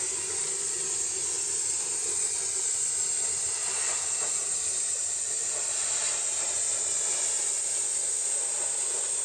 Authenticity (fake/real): real